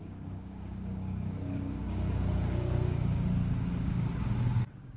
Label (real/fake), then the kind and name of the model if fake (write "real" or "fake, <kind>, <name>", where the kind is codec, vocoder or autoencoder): fake, codec, DAC